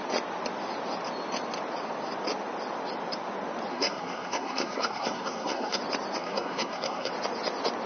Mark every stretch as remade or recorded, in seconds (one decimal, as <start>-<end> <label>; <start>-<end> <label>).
0.0-3.7 recorded; 3.7-5.8 remade; 5.8-6.2 recorded; 6.2-7.1 remade; 7.1-7.9 recorded